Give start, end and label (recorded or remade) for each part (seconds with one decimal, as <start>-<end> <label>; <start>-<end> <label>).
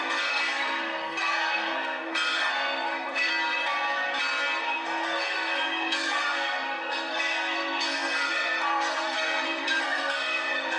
0.0-3.3 remade; 3.3-4.6 recorded; 4.6-10.8 remade